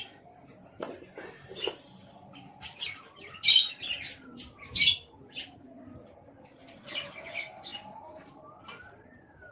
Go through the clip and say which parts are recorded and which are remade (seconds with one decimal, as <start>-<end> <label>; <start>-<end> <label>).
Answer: 0.0-9.5 recorded